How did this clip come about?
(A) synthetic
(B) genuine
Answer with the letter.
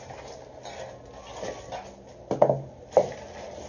B